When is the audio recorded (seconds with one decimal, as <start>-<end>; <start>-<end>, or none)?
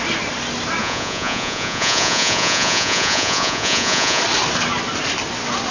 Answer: 0.0-0.8; 4.2-5.7